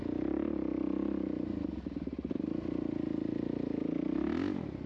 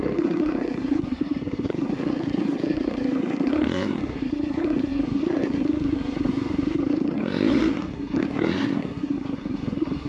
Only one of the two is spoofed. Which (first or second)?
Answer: second